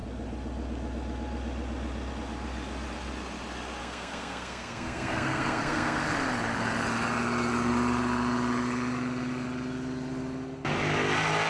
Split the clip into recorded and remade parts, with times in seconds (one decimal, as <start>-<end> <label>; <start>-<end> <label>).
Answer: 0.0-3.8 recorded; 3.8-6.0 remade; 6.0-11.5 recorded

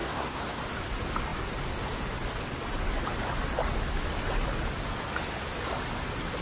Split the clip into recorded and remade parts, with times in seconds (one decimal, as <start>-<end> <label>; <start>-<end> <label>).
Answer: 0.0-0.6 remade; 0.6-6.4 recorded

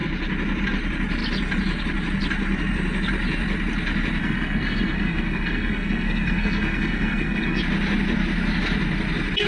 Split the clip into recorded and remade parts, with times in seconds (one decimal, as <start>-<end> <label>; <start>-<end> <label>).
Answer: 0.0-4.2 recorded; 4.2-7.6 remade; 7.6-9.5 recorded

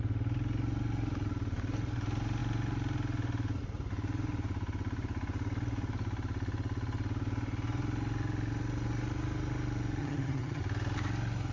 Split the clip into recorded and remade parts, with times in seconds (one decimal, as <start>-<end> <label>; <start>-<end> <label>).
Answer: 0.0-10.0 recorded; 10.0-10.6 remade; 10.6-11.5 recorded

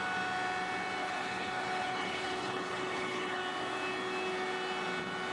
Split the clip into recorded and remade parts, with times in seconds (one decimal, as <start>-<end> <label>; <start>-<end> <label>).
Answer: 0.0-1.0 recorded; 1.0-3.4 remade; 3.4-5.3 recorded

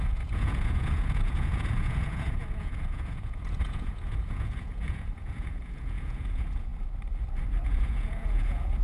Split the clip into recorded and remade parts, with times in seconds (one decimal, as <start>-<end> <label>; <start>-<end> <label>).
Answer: 0.0-6.7 remade; 6.7-7.6 recorded; 7.6-8.8 remade

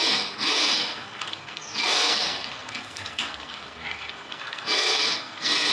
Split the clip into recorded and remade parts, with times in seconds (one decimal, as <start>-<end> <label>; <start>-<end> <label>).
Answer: 0.0-5.7 remade